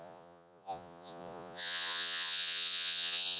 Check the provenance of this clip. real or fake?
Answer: fake